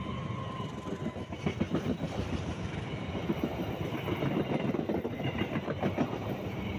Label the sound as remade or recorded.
recorded